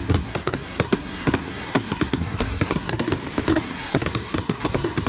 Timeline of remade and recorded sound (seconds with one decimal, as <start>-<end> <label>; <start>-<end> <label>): 0.0-3.1 remade; 3.1-3.5 recorded; 3.5-5.1 remade